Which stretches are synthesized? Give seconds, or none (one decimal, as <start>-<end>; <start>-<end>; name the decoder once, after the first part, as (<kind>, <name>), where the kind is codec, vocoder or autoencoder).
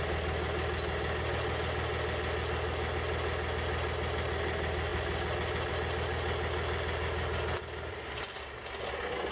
none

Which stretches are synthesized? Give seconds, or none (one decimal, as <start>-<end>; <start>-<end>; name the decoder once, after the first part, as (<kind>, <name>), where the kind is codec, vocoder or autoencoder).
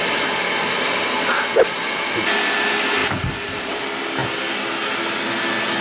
3.0-3.8 (vocoder, BigVGAN v2)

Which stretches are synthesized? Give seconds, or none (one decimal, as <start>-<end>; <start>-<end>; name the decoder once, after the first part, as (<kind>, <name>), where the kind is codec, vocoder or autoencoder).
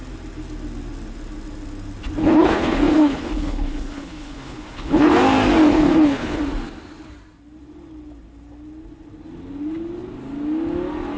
2.2-5.1 (codec, HILCodec); 5.7-6.4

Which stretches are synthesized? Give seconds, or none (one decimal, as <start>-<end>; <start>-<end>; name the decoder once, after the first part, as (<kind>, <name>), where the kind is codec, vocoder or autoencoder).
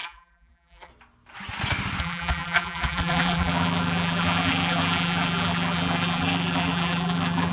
0.0-0.9 (vocoder, BigVGAN v2); 2.0-7.5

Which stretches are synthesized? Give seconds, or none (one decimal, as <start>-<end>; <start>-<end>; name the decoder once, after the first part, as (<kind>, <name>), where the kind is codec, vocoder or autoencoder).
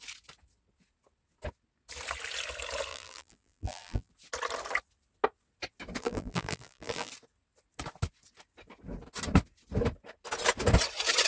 2.9-4.1 (vocoder, BigVGAN v2); 6.0-7.1